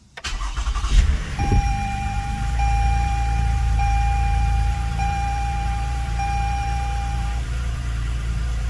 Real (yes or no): no